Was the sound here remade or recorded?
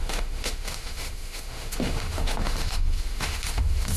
remade